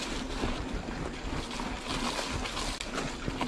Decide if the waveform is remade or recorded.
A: recorded